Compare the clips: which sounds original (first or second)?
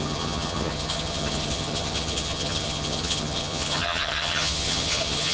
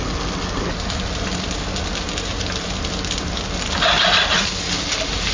second